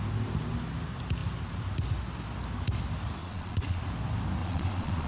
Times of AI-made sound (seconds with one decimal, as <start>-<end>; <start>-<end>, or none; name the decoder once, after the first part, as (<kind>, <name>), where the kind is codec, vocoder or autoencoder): 3.2-3.8 (vocoder, Vocos); 4.4-5.1

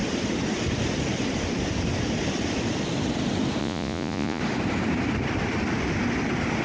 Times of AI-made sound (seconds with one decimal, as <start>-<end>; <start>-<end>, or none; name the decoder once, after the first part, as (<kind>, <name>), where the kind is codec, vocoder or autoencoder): 3.6-4.4 (vocoder, Vocos)